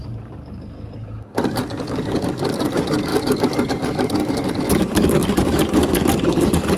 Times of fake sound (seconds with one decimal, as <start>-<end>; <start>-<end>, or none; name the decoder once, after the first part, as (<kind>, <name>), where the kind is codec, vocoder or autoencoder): 0.0-6.8 (codec, DAC)